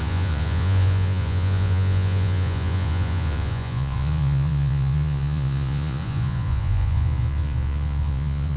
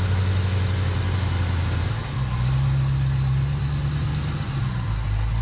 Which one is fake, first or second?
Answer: first